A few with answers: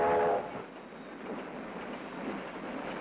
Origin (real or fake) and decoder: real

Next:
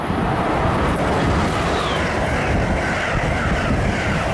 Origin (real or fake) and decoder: real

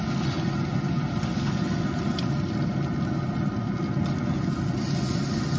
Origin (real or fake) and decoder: real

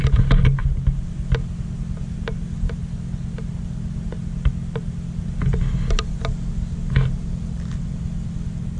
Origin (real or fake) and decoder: real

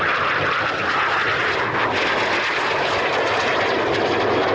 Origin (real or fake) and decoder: real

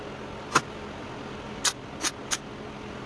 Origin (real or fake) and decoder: real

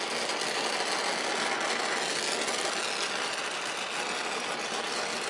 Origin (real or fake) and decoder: real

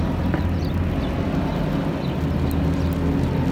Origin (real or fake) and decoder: real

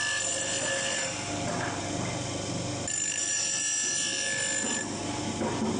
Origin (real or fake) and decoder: real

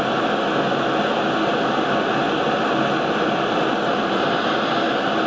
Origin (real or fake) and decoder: real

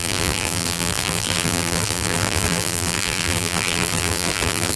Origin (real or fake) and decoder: fake, vocoder, BigVGAN v2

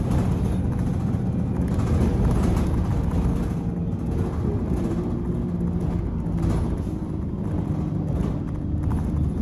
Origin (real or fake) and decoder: real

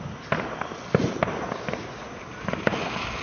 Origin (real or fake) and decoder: real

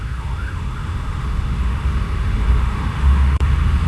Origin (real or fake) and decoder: fake, autoencoder, DAC-VAE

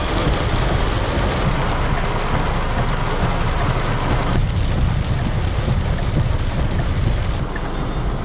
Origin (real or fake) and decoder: real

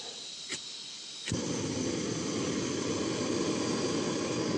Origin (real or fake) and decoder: real